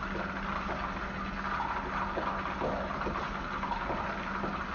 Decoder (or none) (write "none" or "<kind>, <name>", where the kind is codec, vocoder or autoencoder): none